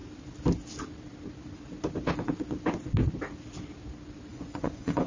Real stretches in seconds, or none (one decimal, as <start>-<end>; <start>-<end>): 0.0-4.3